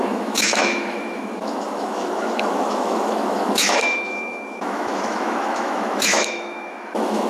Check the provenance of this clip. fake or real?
fake